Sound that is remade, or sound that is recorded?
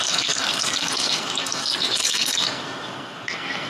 remade